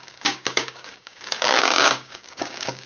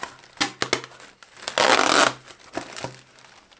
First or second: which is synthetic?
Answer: first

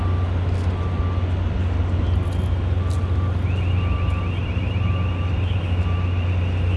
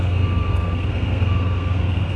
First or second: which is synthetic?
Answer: second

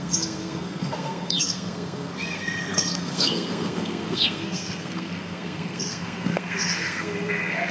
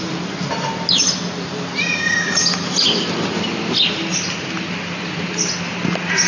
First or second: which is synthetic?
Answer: first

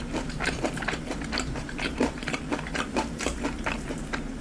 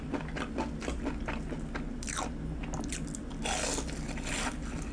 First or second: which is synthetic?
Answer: first